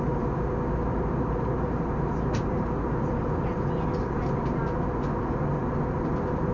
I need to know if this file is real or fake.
real